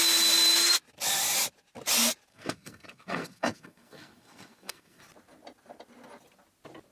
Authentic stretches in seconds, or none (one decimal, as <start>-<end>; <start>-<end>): 0.0-2.3; 5.0-6.9